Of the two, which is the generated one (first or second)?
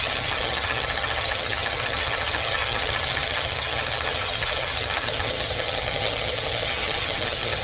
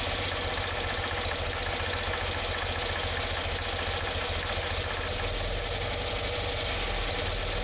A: first